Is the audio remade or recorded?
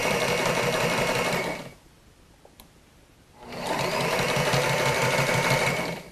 remade